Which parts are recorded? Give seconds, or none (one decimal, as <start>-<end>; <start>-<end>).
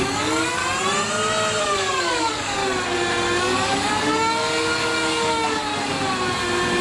0.6-1.6; 2.6-3.4; 5.7-6.8